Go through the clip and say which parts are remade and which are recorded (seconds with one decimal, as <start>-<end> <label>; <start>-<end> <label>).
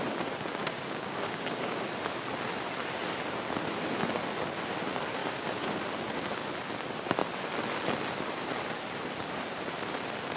0.0-0.6 recorded; 0.6-1.8 remade; 1.8-5.2 recorded; 5.2-5.7 remade; 5.7-10.4 recorded